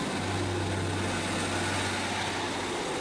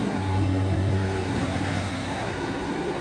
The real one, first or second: first